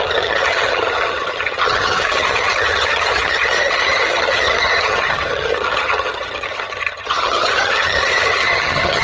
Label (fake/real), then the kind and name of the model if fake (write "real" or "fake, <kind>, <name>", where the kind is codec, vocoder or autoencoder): fake, vocoder, HiFi-GAN